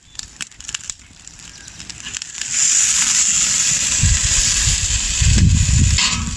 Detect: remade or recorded remade